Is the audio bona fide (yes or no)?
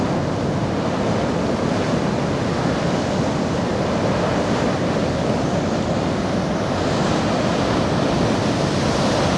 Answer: yes